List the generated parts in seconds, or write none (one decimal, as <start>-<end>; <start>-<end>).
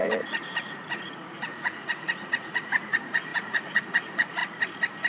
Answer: 0.0-4.4